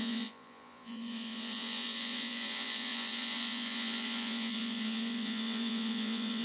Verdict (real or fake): fake